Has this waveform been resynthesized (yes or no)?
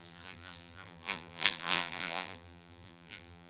yes